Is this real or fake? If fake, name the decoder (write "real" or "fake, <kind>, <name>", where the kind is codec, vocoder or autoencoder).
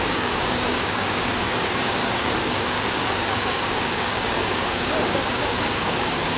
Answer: fake, codec, DAC